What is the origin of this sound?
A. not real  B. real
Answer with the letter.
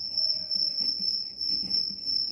A